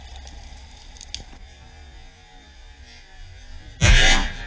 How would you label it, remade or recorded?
recorded